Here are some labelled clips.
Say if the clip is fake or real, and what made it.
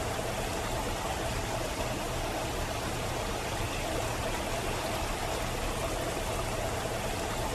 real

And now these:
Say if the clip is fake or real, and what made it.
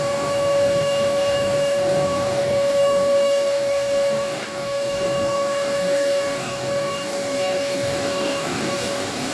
fake, codec, DAC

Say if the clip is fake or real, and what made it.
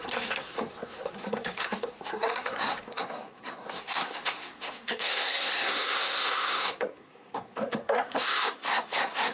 fake, codec, SNAC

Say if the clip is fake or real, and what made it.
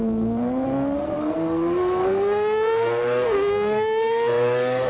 fake, codec, SNAC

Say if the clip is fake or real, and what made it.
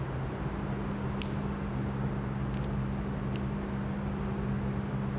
real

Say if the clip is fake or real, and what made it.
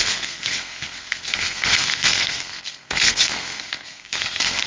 fake, codec, SNAC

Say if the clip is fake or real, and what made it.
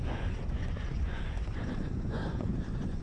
fake, vocoder, Vocos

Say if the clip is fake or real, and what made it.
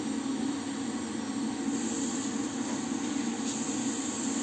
real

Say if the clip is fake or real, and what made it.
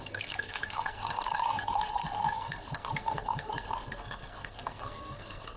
fake, codec, SNAC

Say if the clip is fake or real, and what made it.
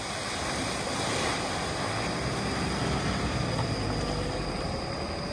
real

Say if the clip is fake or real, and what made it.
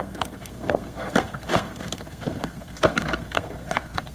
fake, codec, SNAC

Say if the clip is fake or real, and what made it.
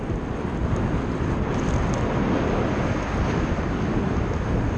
real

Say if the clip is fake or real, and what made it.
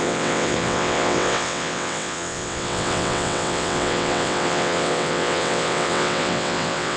fake, vocoder, WaveNeXt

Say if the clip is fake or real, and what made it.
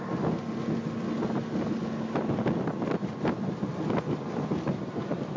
real